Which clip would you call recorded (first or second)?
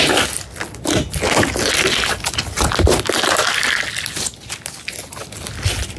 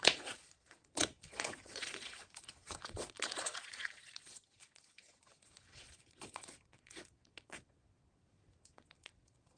first